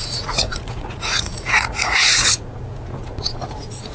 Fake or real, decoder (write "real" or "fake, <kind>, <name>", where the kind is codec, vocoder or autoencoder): fake, vocoder, Vocos